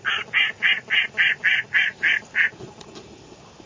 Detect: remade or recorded recorded